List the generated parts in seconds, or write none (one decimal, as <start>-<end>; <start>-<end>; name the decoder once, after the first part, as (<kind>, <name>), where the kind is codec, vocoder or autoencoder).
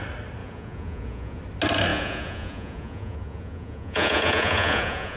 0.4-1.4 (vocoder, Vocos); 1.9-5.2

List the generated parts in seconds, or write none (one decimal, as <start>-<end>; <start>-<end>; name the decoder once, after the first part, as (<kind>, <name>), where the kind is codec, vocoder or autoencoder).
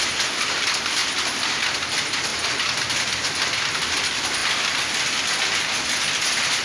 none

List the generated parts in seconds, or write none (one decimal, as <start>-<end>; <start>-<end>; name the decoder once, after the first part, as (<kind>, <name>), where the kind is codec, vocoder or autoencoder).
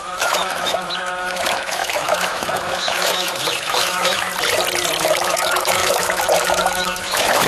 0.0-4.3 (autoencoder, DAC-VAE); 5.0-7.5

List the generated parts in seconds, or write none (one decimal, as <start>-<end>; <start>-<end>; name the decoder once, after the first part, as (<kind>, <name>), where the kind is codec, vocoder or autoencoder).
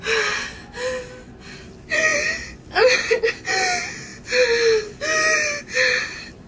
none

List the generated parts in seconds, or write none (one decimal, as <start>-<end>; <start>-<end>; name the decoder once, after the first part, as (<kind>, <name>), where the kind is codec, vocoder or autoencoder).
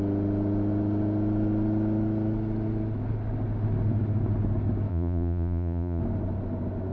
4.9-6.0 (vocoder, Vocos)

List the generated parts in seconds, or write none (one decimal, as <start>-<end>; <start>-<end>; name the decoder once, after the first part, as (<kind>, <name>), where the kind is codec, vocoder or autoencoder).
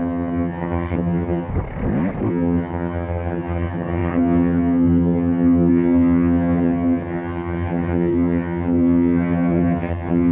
0.0-1.5 (vocoder, HiFi-GAN); 2.3-10.3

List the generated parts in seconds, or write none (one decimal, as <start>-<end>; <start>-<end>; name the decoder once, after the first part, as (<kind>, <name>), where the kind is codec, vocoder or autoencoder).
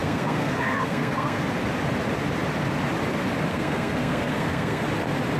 0.0-1.4 (codec, SNAC); 3.5-4.8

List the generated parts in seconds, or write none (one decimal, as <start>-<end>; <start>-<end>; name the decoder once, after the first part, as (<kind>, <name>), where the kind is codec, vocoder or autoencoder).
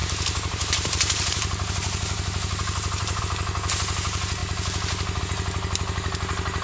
0.0-3.2 (vocoder, BigVGAN v2)